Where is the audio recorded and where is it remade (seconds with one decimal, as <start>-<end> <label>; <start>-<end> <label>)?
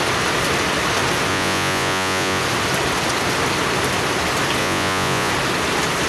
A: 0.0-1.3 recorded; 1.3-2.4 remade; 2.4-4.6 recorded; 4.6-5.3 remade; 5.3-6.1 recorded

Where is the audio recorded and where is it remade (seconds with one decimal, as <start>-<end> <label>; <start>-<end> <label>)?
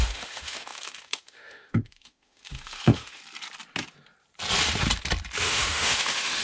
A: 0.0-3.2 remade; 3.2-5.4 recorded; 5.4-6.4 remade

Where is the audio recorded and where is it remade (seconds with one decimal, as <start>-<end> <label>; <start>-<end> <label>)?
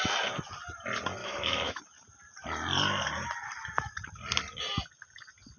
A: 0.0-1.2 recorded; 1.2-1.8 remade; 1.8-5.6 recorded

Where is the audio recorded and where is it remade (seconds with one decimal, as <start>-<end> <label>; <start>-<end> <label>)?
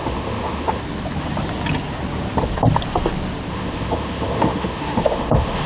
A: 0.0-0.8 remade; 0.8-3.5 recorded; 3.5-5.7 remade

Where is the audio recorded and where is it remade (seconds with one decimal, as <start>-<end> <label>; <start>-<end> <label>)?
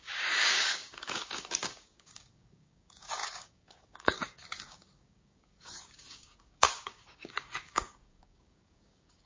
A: 0.0-9.3 remade